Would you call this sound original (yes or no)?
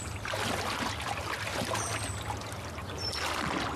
yes